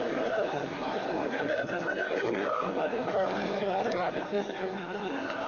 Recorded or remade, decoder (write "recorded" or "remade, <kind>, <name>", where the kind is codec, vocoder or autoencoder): remade, codec, SNAC